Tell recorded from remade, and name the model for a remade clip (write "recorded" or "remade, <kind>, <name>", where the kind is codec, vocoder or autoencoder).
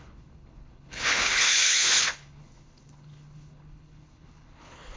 remade, codec, HILCodec